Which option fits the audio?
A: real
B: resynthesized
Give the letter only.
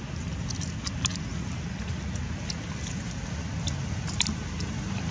A